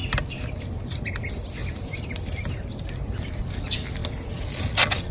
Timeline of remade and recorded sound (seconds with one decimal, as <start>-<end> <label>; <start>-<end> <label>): 0.0-1.1 remade; 1.1-1.6 recorded; 1.6-2.6 remade; 2.6-4.0 recorded; 4.0-5.1 remade